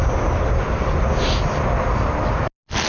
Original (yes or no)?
yes